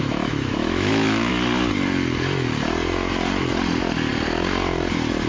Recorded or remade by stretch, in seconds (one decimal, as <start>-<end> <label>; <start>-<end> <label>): 0.0-1.3 remade; 1.3-5.3 recorded